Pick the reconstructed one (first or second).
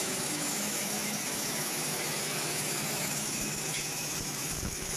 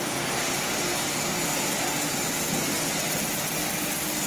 first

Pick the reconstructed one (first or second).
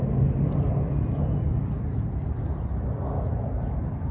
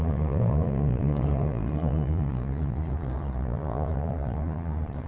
second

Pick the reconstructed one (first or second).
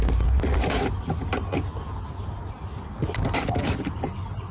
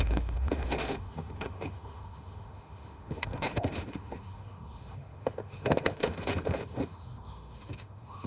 second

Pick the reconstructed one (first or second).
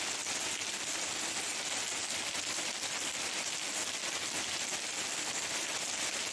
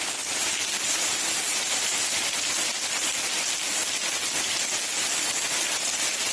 second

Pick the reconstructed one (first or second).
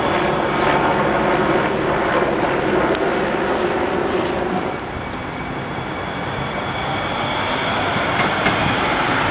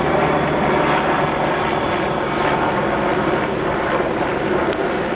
second